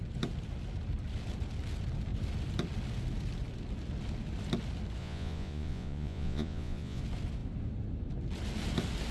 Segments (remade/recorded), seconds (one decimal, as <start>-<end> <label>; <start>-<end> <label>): 0.0-5.0 recorded; 5.0-7.0 remade; 7.0-9.1 recorded